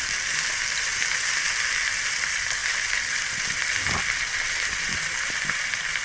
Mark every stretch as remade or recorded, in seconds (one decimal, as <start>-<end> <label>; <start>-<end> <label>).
0.0-6.0 recorded